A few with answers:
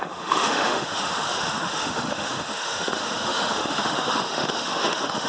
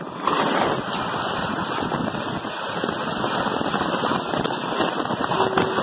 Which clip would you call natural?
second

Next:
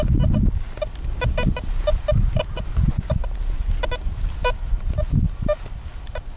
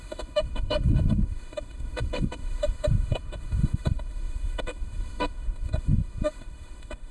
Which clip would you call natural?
first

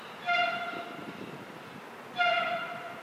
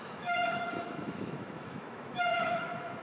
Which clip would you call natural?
first